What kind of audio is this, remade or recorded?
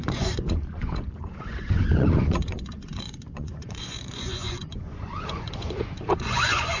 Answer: remade